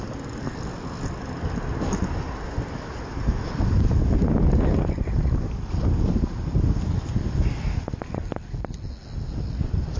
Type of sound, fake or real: real